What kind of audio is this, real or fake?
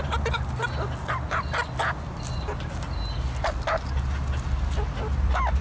real